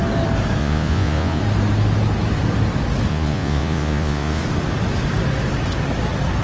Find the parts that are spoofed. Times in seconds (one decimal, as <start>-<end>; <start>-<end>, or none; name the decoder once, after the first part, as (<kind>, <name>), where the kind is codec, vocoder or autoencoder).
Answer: 0.6-1.4 (vocoder, Vocos); 3.1-4.4